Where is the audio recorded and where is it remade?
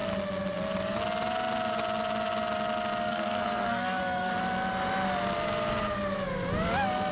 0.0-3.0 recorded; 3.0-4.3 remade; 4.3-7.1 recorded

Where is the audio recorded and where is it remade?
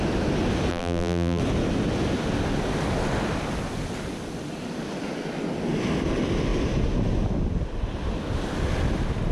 0.0-0.7 recorded; 0.7-1.4 remade; 1.4-9.3 recorded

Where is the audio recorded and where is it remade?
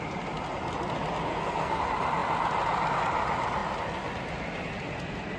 0.0-1.3 recorded; 1.3-1.8 remade; 1.8-5.4 recorded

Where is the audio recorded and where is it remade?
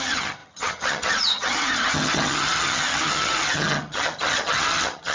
0.0-5.1 remade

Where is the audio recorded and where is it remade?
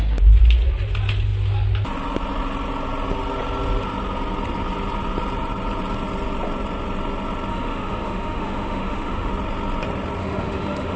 0.0-7.5 recorded; 7.5-9.3 remade; 9.3-10.2 recorded; 10.2-11.0 remade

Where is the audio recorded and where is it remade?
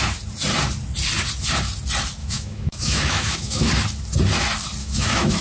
0.0-2.2 recorded; 2.2-3.7 remade; 3.7-4.8 recorded; 4.8-5.4 remade